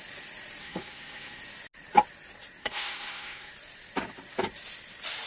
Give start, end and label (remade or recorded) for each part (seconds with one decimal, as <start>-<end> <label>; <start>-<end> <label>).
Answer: 0.0-0.6 recorded; 0.6-1.4 remade; 1.4-2.6 recorded; 2.6-3.5 remade; 3.5-5.3 recorded